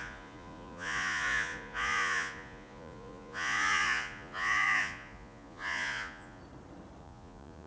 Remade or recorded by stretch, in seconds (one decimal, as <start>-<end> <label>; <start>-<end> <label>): 0.0-6.4 remade; 6.4-7.0 recorded; 7.0-7.7 remade